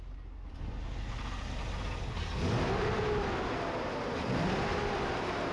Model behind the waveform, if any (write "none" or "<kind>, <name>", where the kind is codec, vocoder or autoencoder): none